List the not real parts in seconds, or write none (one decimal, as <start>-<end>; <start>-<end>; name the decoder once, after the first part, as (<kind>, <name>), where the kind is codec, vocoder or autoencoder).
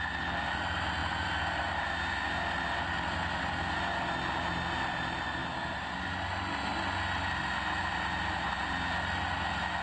none